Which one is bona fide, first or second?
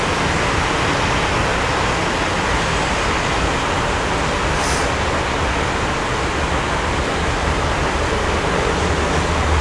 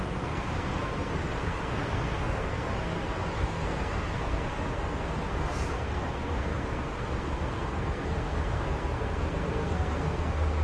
first